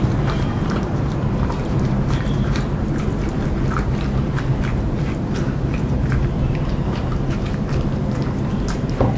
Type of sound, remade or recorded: remade